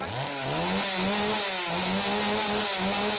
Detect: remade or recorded recorded